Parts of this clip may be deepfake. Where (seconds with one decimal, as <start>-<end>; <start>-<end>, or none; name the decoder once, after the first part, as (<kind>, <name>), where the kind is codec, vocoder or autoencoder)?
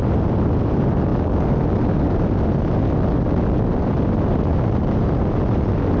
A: 4.5-5.2 (vocoder, BigVGAN v2)